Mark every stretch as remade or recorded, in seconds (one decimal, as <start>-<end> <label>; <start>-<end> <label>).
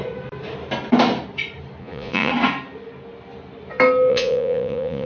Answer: 0.0-1.8 recorded; 1.8-2.3 remade; 2.3-4.1 recorded; 4.1-5.1 remade